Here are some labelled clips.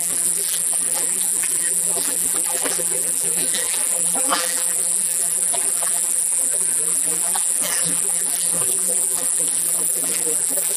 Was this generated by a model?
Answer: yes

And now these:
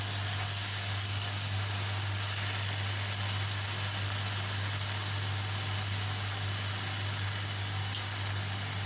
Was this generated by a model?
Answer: no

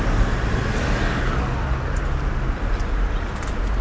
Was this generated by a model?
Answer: no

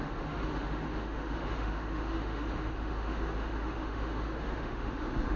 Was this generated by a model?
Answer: yes